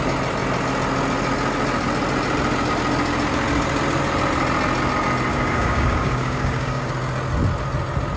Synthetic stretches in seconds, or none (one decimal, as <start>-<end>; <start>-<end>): 5.3-6.9